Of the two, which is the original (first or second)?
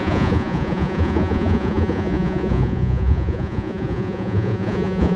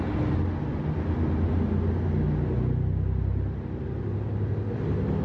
second